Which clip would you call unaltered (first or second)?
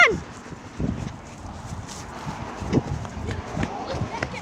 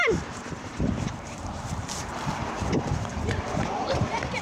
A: first